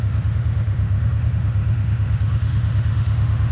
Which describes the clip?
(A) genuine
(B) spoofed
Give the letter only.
B